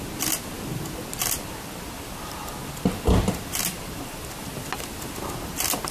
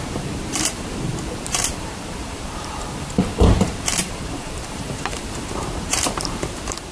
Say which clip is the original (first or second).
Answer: first